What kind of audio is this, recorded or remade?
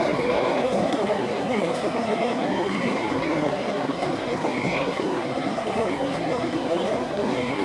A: remade